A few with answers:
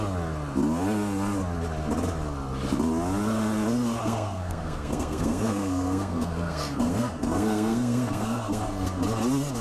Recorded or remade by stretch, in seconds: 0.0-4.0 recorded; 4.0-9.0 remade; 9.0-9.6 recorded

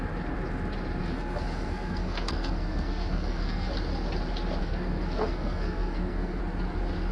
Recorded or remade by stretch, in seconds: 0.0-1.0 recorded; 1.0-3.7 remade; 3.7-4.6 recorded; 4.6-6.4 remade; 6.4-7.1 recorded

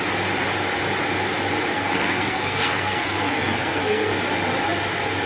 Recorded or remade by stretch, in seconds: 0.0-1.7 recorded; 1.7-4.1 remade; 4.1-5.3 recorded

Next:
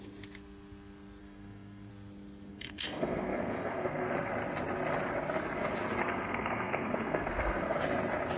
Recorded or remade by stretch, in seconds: 0.0-1.2 recorded; 1.2-1.9 remade; 1.9-2.5 recorded; 2.5-4.3 remade; 4.3-6.0 recorded; 6.0-7.8 remade; 7.8-8.4 recorded

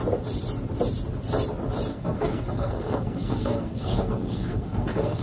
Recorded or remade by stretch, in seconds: 0.0-1.9 recorded; 1.9-5.2 remade

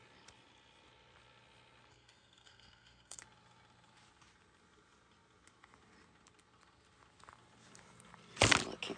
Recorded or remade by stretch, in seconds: 0.0-1.9 recorded; 1.9-3.2 remade; 3.2-9.0 recorded

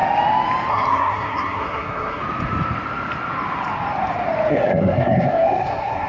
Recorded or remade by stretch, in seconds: 0.0-0.7 recorded; 0.7-2.2 remade; 2.2-4.5 recorded; 4.5-6.1 remade